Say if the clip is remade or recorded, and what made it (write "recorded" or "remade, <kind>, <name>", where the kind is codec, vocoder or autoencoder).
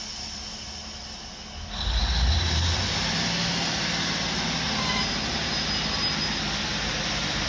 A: recorded